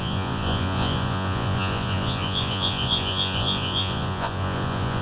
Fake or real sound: fake